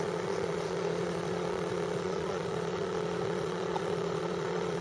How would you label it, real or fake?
fake